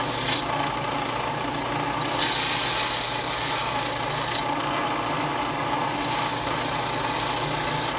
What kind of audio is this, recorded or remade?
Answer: recorded